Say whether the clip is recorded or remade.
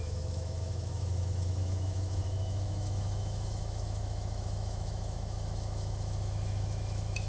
remade